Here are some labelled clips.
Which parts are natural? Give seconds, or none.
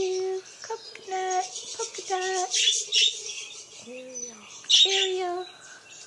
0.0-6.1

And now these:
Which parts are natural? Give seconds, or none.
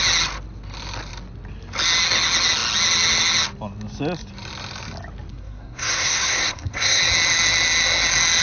0.0-5.3; 7.0-8.4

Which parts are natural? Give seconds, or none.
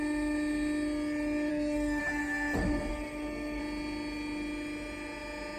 0.0-1.5; 2.0-2.9; 3.6-5.6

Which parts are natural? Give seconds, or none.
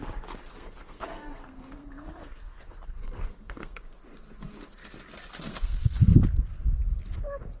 0.0-0.5; 3.8-5.5; 6.2-7.6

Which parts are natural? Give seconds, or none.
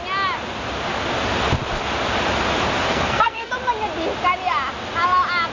0.0-2.9; 3.5-5.5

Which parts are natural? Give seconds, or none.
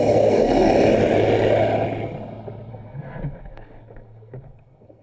0.7-2.7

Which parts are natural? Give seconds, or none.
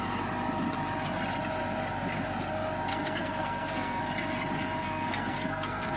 0.0-2.9; 4.0-4.8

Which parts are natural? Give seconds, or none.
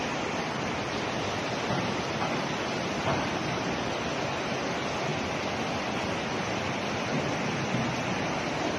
0.0-8.8